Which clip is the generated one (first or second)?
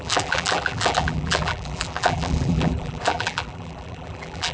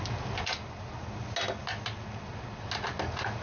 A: first